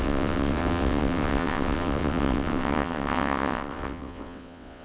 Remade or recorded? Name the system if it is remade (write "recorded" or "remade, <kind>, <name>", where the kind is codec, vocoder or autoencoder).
remade, vocoder, WaveNeXt